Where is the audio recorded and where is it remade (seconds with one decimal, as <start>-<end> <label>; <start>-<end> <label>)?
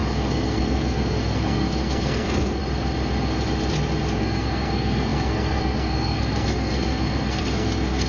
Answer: 0.0-2.6 remade; 2.6-4.2 recorded; 4.2-8.1 remade